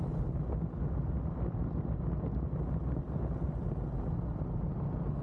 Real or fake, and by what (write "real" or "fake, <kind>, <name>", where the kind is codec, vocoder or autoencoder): real